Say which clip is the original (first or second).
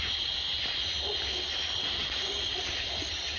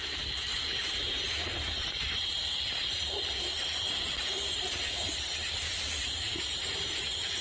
first